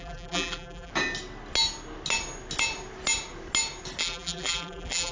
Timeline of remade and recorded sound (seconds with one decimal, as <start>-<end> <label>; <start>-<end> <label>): 0.0-0.9 remade; 0.9-4.0 recorded; 4.0-5.1 remade